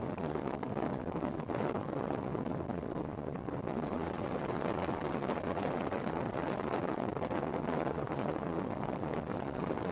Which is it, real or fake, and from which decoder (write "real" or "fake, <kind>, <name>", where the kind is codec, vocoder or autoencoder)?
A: fake, vocoder, WaveNeXt